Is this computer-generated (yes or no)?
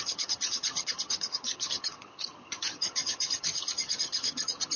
yes